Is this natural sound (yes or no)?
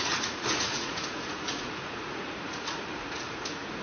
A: no